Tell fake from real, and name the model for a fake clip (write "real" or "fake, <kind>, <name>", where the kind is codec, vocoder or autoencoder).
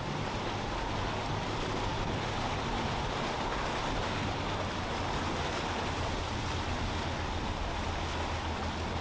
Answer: real